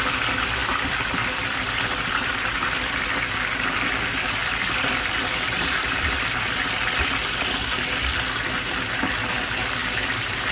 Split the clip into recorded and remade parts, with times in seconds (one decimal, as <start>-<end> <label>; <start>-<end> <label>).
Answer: 0.0-0.6 recorded; 0.6-2.1 remade; 2.1-4.4 recorded; 4.4-7.4 remade; 7.4-9.8 recorded; 9.8-10.5 remade